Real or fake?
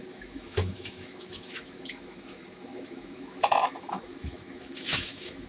fake